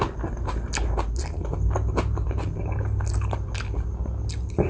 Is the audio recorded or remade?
recorded